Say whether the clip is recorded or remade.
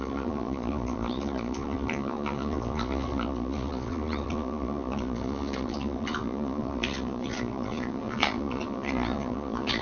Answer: remade